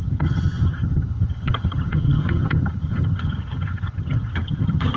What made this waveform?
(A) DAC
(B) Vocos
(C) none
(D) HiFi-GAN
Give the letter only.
D